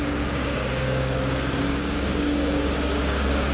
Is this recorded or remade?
remade